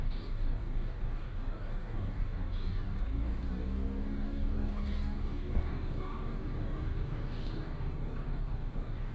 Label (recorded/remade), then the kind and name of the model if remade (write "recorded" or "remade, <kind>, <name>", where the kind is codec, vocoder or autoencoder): remade, codec, DAC